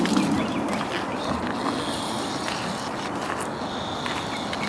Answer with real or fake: real